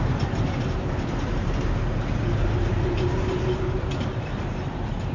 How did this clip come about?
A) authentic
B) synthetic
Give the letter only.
A